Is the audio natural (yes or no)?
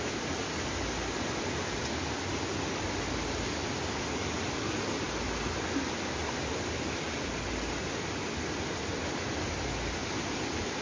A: yes